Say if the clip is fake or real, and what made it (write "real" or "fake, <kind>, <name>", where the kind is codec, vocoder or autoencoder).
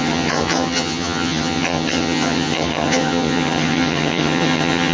fake, vocoder, HiFi-GAN